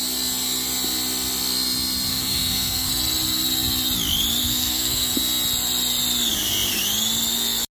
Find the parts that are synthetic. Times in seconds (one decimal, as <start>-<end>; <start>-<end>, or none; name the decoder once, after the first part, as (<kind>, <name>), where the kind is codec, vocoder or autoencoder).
2.1-2.9 (codec, SNAC); 4.4-5.1